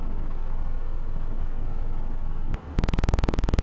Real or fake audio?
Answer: fake